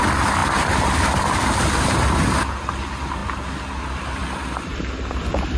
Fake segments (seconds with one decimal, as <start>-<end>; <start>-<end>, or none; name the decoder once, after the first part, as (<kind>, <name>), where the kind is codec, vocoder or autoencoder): 4.2-4.8 (vocoder, BigVGAN v2)